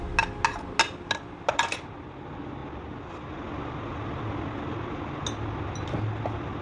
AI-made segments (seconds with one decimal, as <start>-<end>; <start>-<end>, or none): none